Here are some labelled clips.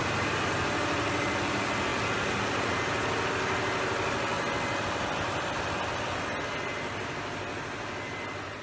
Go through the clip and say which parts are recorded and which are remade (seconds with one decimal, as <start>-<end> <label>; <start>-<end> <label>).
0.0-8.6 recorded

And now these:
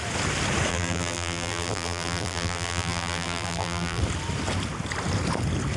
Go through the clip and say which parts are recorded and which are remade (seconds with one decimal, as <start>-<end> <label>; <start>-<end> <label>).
0.0-0.7 recorded; 0.7-4.0 remade; 4.0-5.8 recorded

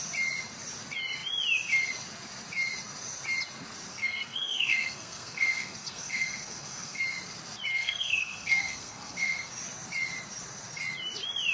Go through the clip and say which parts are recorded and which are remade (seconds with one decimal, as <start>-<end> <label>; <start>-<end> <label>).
0.0-3.9 recorded; 3.9-7.0 remade; 7.0-7.7 recorded; 7.7-9.5 remade; 9.5-11.5 recorded

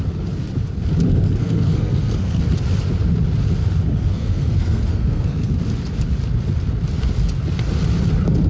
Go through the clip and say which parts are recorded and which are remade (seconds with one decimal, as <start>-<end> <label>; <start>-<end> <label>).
0.0-1.1 recorded; 1.1-2.4 remade; 2.4-3.9 recorded; 3.9-5.5 remade; 5.5-8.5 recorded

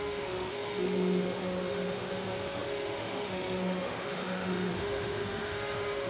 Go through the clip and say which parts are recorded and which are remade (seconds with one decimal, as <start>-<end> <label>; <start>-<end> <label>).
0.0-6.1 remade

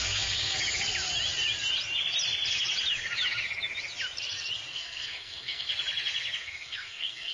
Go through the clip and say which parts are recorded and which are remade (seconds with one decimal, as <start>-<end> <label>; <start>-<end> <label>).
0.0-0.6 remade; 0.6-4.7 recorded; 4.7-5.7 remade; 5.7-6.4 recorded; 6.4-7.3 remade

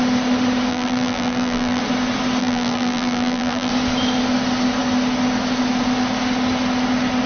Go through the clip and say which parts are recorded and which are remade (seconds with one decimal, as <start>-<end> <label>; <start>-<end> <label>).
0.0-0.7 recorded; 0.7-1.8 remade; 1.8-2.4 recorded; 2.4-3.7 remade; 3.7-7.3 recorded

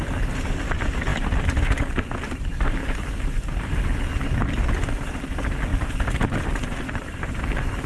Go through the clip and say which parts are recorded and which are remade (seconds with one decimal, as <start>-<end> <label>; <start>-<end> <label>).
0.0-2.8 recorded; 2.8-3.8 remade; 3.8-5.7 recorded; 5.7-7.4 remade; 7.4-7.9 recorded